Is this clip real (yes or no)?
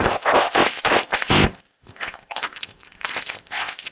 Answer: no